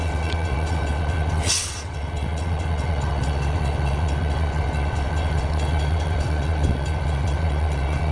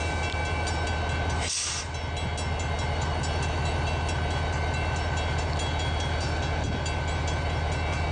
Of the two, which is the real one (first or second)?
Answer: second